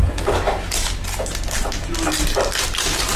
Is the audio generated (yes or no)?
no